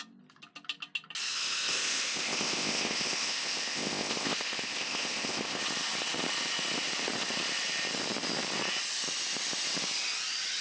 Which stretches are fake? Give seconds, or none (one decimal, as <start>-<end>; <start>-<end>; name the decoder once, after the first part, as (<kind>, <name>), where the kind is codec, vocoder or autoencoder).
1.3-5.6 (codec, ZipCodec)